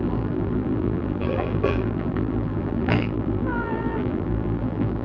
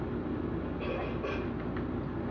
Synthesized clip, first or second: first